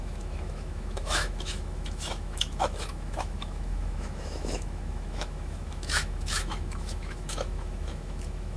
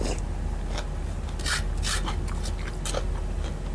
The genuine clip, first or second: second